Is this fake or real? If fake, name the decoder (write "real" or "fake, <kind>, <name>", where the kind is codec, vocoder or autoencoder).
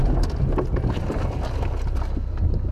real